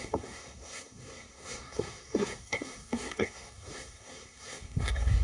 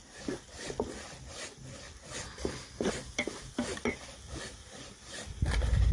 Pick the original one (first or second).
second